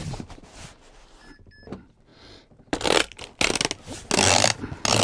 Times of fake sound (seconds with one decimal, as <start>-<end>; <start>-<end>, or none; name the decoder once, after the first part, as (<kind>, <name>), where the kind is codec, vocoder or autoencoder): none